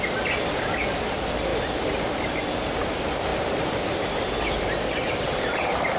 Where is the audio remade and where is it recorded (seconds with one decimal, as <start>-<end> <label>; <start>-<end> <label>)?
0.0-6.0 remade